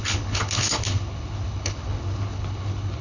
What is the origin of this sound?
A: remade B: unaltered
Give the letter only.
A